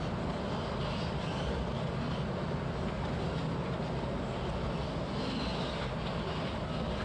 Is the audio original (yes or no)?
yes